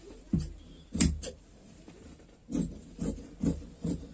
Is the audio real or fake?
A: real